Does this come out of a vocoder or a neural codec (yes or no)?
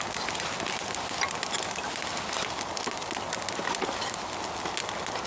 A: no